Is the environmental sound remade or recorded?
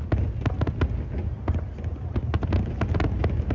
recorded